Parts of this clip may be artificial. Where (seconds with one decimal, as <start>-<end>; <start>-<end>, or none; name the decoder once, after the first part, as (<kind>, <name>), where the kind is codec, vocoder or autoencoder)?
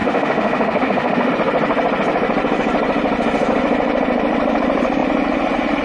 0.0-1.3 (autoencoder, DAC-VAE)